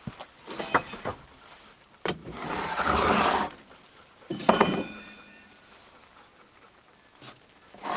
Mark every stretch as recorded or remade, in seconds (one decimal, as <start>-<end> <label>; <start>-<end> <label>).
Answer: 0.0-2.2 recorded; 2.2-5.7 remade; 5.7-8.0 recorded